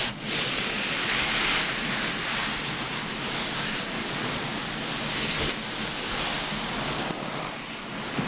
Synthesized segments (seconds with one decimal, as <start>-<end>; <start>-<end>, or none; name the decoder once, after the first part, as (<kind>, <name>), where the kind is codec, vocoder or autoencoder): 0.0-1.1 (vocoder, Vocos); 4.0-4.6